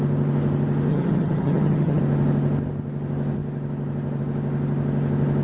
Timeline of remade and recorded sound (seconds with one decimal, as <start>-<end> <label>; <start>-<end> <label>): 0.0-0.9 recorded; 0.9-2.0 remade; 2.0-5.4 recorded